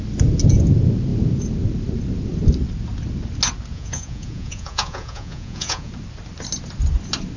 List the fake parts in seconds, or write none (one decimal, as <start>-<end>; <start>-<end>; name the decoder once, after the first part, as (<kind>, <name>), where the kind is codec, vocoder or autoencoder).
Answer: 3.7-5.9 (vocoder, Vocos)

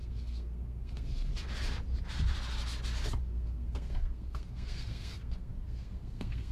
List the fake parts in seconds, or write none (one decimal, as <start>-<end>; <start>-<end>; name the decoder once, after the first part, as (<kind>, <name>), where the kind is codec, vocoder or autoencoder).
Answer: 0.0-1.3 (codec, SNAC); 3.2-6.5

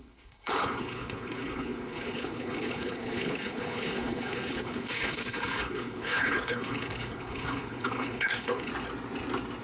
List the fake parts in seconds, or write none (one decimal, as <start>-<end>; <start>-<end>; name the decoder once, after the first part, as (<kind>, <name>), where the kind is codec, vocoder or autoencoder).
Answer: 0.0-8.7 (codec, HILCodec)

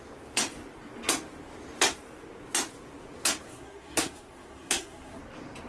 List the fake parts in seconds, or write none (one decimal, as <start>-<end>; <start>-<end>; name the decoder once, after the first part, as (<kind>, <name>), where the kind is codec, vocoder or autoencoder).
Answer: 3.5-5.2 (codec, SNAC)

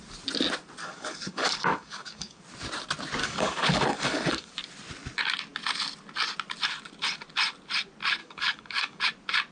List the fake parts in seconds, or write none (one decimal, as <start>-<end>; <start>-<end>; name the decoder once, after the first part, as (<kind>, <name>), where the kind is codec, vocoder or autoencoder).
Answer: 0.8-2.4 (codec, DAC); 3.2-4.5; 8.2-9.0

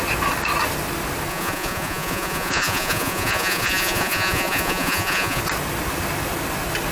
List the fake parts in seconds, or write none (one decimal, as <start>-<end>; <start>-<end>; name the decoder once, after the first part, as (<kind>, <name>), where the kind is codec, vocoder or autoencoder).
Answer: 1.3-5.4 (vocoder, Vocos)